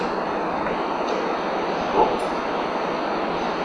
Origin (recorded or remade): recorded